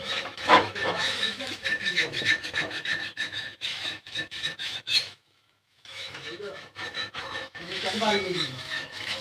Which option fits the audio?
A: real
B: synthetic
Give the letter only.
B